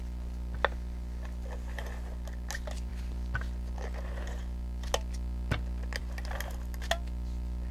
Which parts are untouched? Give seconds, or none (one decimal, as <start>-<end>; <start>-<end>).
0.0-7.7